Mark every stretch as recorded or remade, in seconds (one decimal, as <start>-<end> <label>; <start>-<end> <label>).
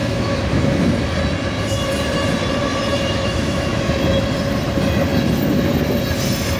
0.0-0.9 remade; 0.9-2.9 recorded; 2.9-4.2 remade; 4.2-6.6 recorded